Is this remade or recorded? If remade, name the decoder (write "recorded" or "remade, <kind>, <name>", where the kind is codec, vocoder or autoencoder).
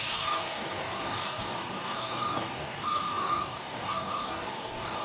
remade, codec, DAC